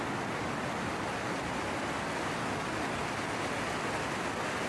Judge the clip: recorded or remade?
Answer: recorded